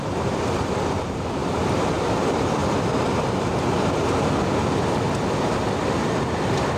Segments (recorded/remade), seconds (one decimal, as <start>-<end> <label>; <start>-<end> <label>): 0.0-1.4 recorded; 1.4-2.1 remade; 2.1-6.8 recorded